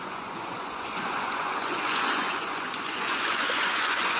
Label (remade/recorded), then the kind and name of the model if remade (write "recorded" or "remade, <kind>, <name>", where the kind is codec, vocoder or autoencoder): remade, vocoder, Vocos